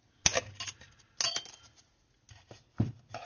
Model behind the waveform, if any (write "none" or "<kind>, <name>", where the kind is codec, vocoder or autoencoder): none